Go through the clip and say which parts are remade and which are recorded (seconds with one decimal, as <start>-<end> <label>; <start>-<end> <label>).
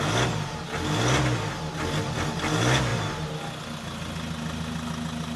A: 0.0-5.4 recorded